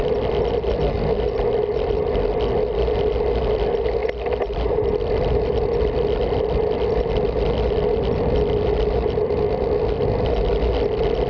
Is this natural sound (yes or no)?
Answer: yes